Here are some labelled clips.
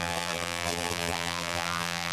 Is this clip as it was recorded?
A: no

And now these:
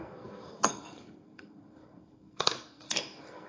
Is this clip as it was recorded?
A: no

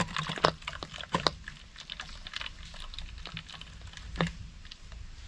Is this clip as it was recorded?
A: yes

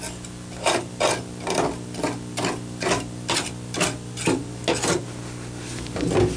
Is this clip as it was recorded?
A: yes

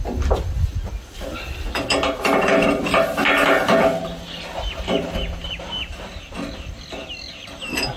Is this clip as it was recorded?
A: yes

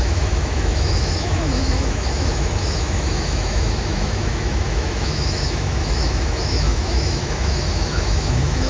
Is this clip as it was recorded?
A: no